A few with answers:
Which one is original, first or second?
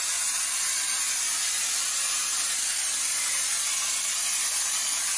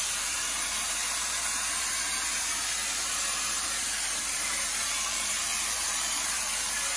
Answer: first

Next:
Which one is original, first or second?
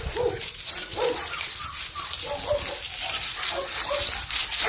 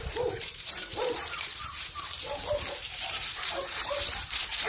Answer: first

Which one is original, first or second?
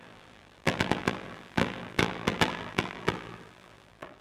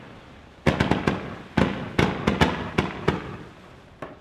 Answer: second